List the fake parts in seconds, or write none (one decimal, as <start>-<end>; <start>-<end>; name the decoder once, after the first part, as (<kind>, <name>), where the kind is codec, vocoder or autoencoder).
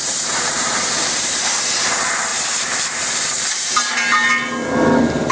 0.0-1.9 (vocoder, BigVGAN v2); 2.3-4.3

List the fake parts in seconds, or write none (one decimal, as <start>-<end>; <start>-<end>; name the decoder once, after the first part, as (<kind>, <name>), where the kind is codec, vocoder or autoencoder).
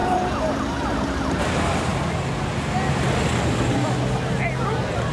0.0-1.9 (vocoder, BigVGAN v2)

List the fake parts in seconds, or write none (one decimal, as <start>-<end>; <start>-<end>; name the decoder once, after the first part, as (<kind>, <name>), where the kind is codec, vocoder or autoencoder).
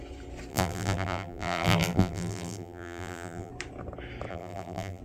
0.5-3.5 (vocoder, BigVGAN v2); 4.3-5.0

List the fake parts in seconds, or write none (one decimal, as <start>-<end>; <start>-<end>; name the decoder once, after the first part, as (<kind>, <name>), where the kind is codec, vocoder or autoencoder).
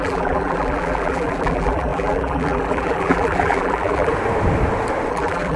0.0-4.1 (vocoder, BigVGAN v2); 5.1-5.6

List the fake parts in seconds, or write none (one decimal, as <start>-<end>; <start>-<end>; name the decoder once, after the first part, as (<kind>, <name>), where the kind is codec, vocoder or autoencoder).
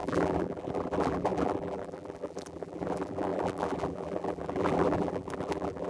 0.0-5.9 (vocoder, BigVGAN v2)